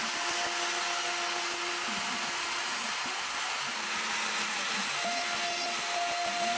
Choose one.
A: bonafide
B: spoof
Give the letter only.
A